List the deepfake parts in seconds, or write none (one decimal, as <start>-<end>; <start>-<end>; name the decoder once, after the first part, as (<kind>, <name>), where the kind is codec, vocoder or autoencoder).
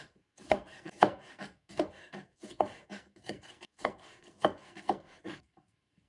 0.0-6.1 (codec, SNAC)